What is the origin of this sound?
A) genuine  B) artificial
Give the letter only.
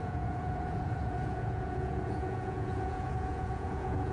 B